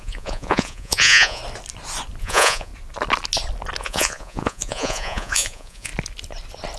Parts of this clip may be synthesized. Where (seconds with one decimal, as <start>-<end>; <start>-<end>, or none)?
0.0-1.4; 2.2-2.7; 3.8-5.9